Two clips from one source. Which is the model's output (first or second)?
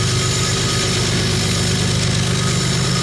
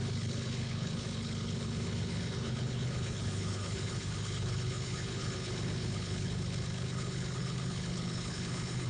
second